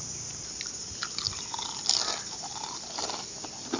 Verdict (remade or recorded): recorded